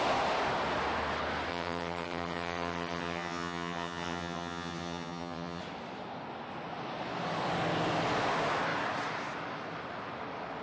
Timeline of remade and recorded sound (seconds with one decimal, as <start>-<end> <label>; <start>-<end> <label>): 0.0-1.5 recorded; 1.5-5.6 remade; 5.6-10.6 recorded